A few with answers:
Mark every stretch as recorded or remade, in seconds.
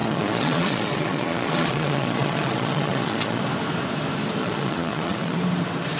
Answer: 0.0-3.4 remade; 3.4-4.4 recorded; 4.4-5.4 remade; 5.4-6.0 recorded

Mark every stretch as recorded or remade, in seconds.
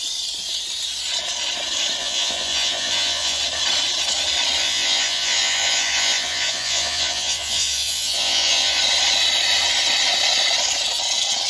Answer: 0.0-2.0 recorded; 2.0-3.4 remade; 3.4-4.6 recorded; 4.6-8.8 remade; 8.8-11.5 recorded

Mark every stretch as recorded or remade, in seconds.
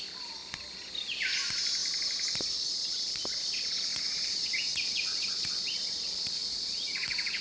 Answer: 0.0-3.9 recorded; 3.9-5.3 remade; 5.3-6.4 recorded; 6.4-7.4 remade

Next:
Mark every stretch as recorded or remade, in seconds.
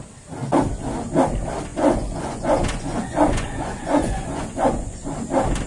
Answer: 0.0-1.7 recorded; 1.7-5.1 remade; 5.1-5.7 recorded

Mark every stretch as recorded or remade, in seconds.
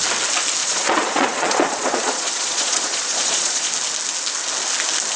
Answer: 0.0-0.6 recorded; 0.6-3.7 remade; 3.7-5.2 recorded